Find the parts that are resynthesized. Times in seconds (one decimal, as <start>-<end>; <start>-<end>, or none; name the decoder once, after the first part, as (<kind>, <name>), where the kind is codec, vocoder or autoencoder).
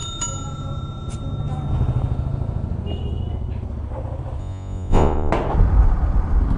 4.4-5.3 (vocoder, Vocos)